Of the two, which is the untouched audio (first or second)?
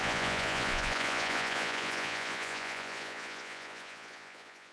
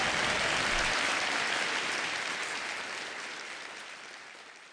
second